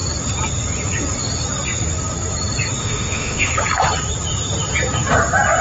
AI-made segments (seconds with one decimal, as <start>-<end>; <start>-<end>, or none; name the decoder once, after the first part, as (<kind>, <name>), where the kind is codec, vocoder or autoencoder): 2.8-3.5 (autoencoder, DAC-VAE)